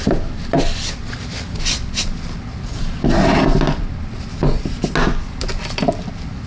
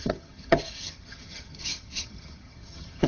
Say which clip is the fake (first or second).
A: second